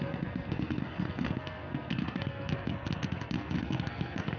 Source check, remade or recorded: remade